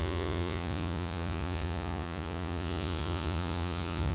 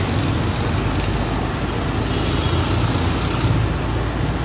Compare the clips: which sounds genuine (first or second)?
second